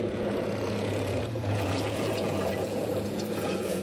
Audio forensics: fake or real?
fake